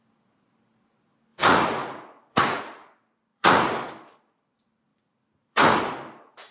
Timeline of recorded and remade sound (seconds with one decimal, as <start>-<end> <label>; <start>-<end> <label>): 0.0-1.3 recorded; 1.3-2.6 remade; 2.6-3.3 recorded; 3.3-3.9 remade; 3.9-4.9 recorded; 4.9-5.8 remade; 5.8-6.5 recorded